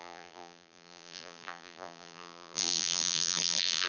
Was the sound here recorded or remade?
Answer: remade